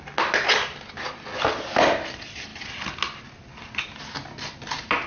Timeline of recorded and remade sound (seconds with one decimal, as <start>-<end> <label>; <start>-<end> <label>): 0.0-5.1 recorded